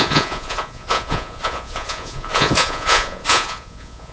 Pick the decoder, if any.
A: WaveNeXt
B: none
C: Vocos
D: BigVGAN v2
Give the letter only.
C